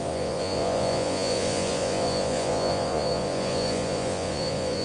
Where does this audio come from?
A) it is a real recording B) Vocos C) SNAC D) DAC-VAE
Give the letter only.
B